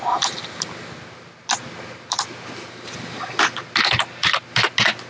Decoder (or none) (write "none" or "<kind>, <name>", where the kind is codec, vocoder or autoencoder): none